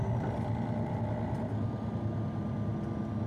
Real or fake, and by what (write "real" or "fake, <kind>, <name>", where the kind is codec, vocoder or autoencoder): real